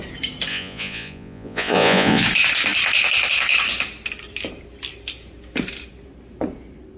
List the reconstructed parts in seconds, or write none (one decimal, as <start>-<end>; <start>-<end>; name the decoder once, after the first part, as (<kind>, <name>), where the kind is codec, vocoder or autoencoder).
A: 0.5-2.2 (vocoder, Vocos)